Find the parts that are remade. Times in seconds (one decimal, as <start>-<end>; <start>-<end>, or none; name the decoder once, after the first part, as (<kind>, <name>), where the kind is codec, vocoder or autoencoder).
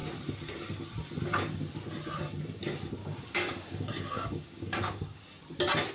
3.0-5.2 (codec, DAC)